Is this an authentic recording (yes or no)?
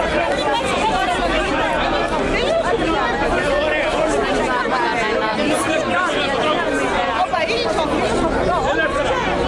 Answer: yes